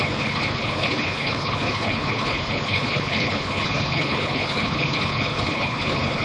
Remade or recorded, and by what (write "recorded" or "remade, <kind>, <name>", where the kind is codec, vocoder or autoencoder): remade, codec, HILCodec